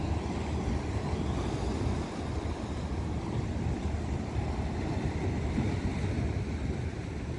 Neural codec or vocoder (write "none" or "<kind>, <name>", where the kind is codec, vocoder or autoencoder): none